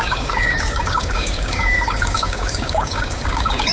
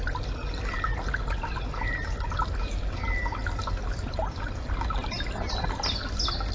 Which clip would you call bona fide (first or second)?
second